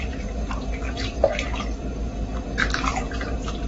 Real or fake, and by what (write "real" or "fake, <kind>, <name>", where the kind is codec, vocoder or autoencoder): fake, vocoder, BigVGAN v2